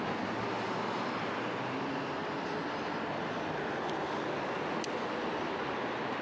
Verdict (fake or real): real